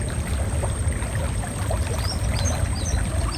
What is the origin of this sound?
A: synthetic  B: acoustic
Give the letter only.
B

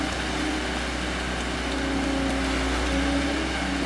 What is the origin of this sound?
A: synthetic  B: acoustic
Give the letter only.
B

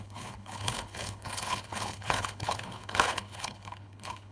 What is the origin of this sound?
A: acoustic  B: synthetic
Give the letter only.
B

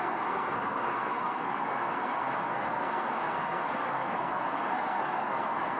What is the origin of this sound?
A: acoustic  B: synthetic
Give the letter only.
B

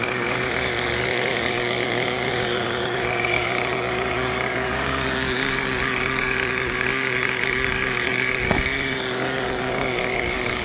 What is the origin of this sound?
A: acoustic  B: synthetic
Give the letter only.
B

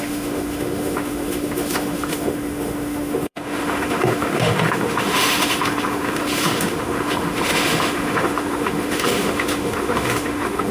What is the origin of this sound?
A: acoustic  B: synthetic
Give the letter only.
B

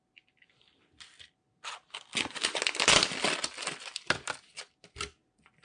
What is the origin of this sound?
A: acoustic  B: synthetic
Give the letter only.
A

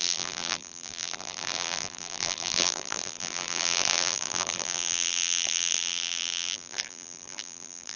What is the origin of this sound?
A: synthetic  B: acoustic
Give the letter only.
A